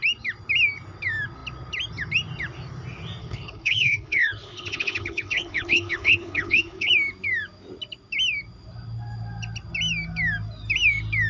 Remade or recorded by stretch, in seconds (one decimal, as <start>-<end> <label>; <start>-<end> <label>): 0.0-3.2 recorded; 3.2-6.9 remade; 6.9-11.3 recorded